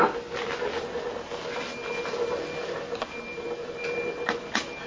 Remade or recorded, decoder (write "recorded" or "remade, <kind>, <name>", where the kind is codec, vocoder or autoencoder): recorded